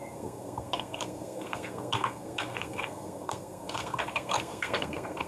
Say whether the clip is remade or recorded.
remade